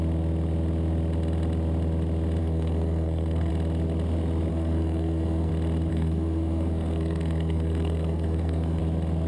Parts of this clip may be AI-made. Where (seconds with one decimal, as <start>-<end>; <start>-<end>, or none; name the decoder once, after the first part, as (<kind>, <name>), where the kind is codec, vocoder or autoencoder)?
2.4-3.5 (codec, SNAC); 4.5-5.5; 5.9-8.8